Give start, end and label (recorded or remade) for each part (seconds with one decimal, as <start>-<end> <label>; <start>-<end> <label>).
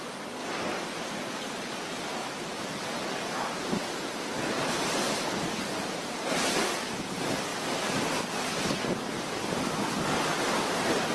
0.0-2.2 recorded; 2.2-6.4 remade; 6.4-11.1 recorded